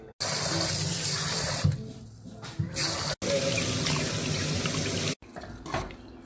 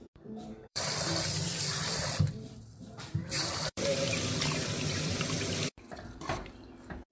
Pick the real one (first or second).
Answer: first